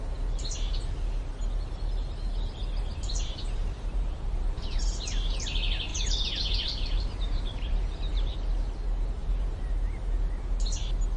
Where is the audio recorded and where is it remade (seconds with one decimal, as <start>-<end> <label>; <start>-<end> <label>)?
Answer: 0.0-2.9 recorded; 2.9-4.9 remade; 4.9-5.9 recorded; 5.9-8.3 remade; 8.3-9.2 recorded; 9.2-9.7 remade; 9.7-11.2 recorded